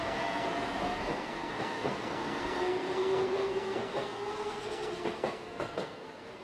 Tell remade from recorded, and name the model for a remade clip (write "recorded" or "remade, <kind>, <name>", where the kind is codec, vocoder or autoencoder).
remade, codec, SNAC